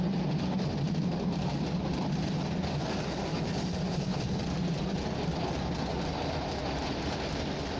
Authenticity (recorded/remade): recorded